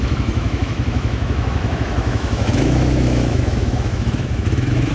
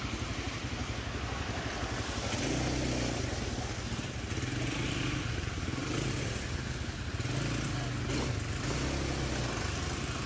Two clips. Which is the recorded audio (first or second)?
second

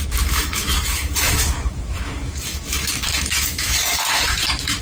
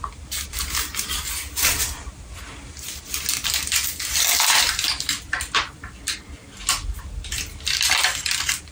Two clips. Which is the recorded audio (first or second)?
second